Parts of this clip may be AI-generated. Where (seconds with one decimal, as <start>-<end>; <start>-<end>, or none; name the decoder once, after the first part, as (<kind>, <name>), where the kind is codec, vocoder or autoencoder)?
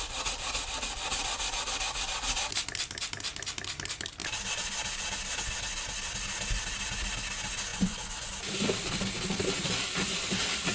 7.7-8.3 (vocoder, Vocos)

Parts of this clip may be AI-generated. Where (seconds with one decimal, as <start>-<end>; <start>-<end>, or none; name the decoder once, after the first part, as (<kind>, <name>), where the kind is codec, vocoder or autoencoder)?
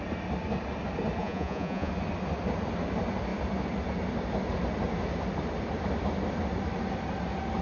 1.2-1.9 (vocoder, Vocos)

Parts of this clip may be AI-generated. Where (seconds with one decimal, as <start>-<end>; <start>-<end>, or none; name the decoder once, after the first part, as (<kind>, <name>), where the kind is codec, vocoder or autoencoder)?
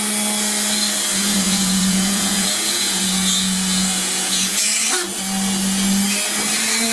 1.1-4.6 (vocoder, Vocos)